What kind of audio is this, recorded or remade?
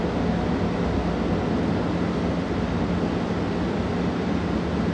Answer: recorded